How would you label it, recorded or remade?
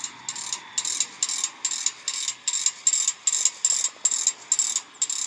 recorded